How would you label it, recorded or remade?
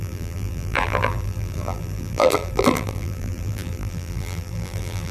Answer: remade